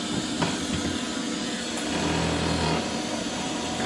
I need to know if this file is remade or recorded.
recorded